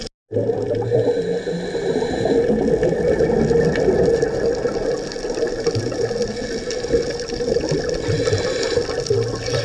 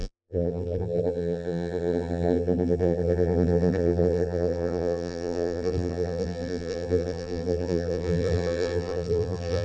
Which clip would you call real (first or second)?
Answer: first